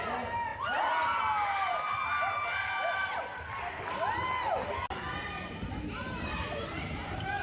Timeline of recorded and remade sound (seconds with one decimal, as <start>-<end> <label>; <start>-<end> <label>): 0.0-7.4 recorded